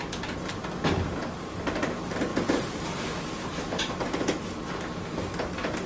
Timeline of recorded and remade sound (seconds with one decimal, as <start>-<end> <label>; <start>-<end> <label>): 0.0-5.9 recorded